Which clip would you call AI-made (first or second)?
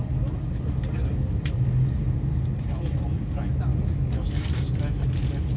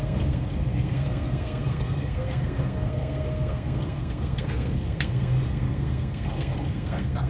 second